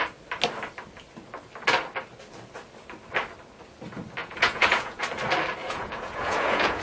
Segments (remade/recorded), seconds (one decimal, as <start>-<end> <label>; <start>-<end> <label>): 0.0-4.2 recorded; 4.2-5.0 remade; 5.0-5.6 recorded; 5.6-6.8 remade